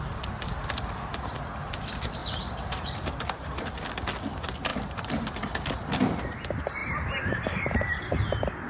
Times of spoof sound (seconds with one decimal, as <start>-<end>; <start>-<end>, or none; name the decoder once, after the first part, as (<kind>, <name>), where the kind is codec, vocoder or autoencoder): 2.2-3.2 (vocoder, BigVGAN v2); 4.7-5.5; 6.8-8.0

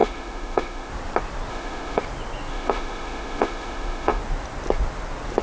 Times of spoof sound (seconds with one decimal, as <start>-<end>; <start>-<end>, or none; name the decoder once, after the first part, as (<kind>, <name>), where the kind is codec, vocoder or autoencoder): 0.0-0.9 (autoencoder, DAC-VAE); 1.5-2.0; 2.5-4.2

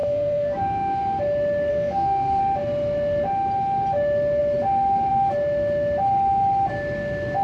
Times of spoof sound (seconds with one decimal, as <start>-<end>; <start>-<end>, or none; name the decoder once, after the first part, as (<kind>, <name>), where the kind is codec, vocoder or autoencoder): 0.0-1.2 (codec, SNAC); 1.7-2.4